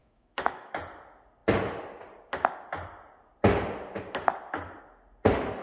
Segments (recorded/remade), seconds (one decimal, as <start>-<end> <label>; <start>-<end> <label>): 0.0-0.8 remade; 0.8-5.6 recorded

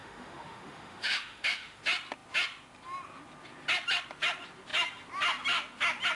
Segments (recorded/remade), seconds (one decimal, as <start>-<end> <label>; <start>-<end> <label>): 0.0-1.8 remade; 1.8-6.1 recorded

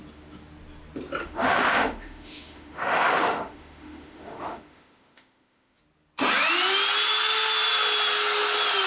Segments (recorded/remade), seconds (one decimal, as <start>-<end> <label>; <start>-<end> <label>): 0.0-1.2 recorded; 1.2-5.8 remade; 5.8-8.9 recorded